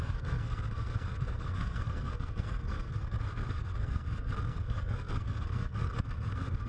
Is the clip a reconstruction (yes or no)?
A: yes